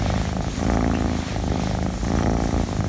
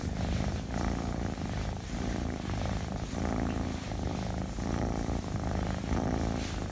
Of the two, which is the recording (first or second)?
first